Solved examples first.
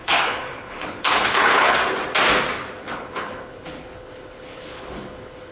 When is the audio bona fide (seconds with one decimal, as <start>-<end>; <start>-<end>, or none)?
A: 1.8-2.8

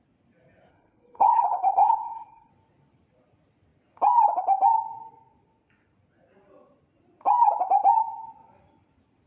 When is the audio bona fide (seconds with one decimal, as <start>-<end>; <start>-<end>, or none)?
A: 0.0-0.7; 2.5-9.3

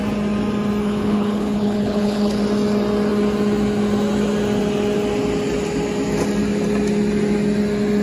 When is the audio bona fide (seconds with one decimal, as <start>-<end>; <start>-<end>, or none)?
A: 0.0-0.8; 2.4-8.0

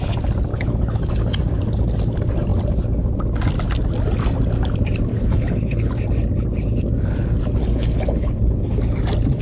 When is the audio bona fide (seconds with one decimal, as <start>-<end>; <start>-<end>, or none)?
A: 0.0-0.5; 1.1-5.1; 5.9-7.6; 8.8-9.4

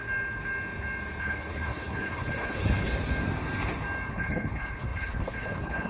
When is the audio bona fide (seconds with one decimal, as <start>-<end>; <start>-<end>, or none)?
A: 0.0-1.2; 2.9-4.1

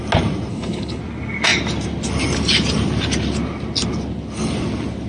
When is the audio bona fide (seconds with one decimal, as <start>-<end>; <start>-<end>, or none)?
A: 0.0-0.5; 1.0-5.1

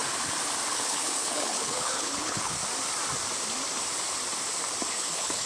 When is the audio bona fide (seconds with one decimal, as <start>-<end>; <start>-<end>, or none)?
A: 0.0-0.7; 2.6-4.9

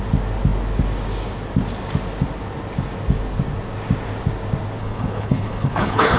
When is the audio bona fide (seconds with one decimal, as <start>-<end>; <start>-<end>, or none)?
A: 0.0-4.8